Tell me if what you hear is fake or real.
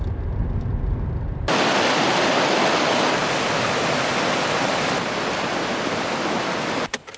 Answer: real